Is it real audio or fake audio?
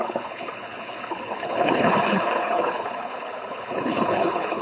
fake